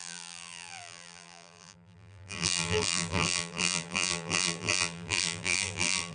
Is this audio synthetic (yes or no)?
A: yes